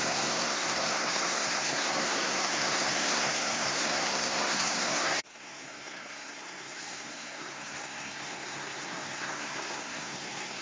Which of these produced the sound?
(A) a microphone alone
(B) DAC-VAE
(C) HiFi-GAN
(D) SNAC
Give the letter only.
D